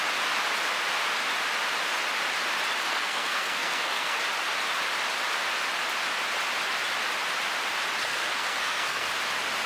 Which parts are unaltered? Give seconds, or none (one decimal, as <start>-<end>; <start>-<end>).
0.0-2.9; 4.2-8.0; 9.1-9.7